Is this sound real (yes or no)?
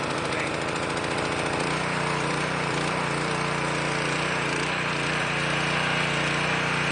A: no